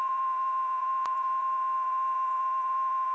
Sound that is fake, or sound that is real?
fake